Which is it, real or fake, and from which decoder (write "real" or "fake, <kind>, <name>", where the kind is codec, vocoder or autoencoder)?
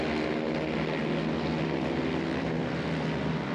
real